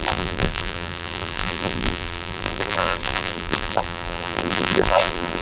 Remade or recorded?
remade